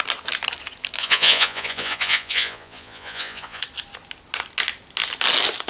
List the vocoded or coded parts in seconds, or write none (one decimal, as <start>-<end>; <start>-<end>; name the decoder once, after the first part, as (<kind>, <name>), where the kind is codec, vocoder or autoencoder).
1.0-3.6 (vocoder, Vocos)